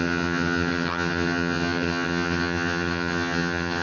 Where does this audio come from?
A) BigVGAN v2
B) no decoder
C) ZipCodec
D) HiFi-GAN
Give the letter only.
D